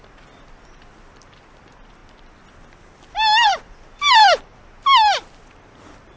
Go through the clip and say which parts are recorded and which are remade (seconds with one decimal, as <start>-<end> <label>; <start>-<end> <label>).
0.0-6.2 recorded